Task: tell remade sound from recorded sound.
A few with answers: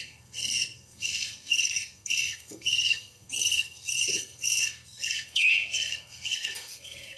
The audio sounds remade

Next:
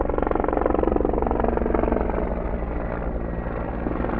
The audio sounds recorded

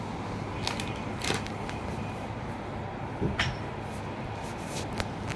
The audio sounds recorded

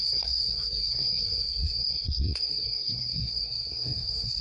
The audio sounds remade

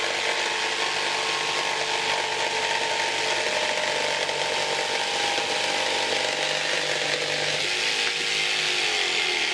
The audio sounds recorded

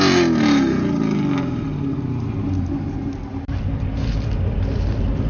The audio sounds recorded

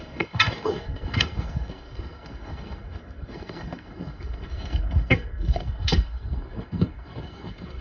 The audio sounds remade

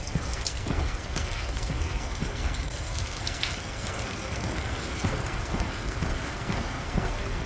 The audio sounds remade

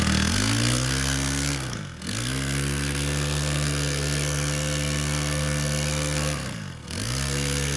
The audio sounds remade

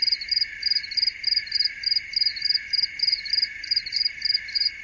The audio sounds recorded